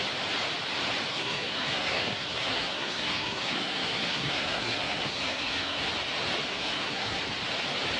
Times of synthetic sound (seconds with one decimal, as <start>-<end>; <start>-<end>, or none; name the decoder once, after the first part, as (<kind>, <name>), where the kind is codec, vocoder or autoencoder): 1.1-5.9 (codec, SNAC); 6.5-7.2